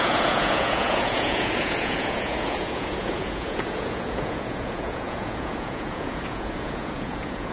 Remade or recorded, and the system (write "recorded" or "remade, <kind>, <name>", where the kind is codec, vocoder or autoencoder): remade, vocoder, Vocos